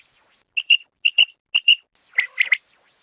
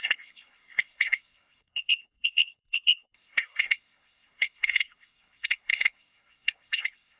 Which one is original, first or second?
first